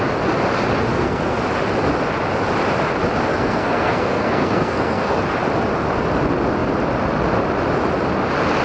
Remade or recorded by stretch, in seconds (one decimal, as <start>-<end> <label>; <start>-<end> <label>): 0.0-0.9 recorded; 0.9-1.4 remade; 1.4-3.3 recorded; 3.3-5.2 remade; 5.2-8.6 recorded